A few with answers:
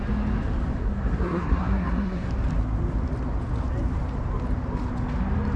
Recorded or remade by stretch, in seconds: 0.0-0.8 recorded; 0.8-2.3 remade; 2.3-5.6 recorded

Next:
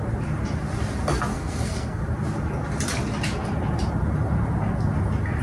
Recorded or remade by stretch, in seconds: 0.0-1.3 recorded; 1.3-2.0 remade; 2.0-5.4 recorded

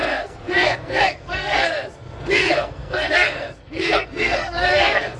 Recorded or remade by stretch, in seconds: 0.0-5.2 remade

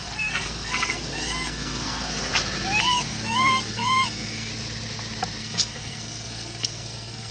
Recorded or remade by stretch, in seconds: 0.0-2.3 remade; 2.3-2.8 recorded; 2.8-4.5 remade; 4.5-5.4 recorded; 5.4-7.3 remade

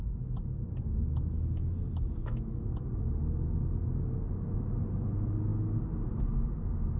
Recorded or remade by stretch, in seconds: 0.0-7.0 recorded